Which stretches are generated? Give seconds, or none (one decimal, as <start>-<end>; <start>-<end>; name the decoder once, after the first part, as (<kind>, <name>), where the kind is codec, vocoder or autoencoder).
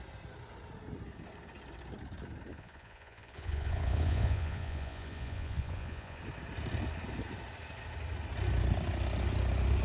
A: 2.5-6.2 (vocoder, Vocos)